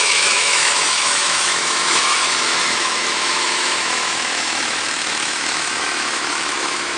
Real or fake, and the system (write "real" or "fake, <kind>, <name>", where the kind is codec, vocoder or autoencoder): fake, autoencoder, DAC-VAE